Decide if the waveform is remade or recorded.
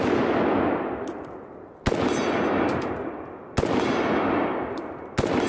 recorded